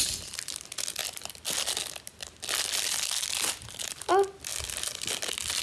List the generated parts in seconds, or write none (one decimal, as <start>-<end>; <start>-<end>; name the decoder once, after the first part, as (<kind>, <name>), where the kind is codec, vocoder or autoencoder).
none